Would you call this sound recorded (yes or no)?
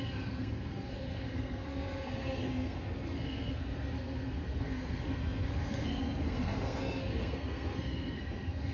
no